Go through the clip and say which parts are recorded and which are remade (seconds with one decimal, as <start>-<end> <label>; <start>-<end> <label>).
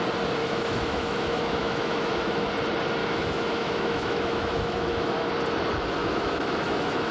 0.0-0.4 recorded; 0.4-2.5 remade; 2.5-3.0 recorded; 3.0-5.3 remade; 5.3-6.0 recorded; 6.0-7.1 remade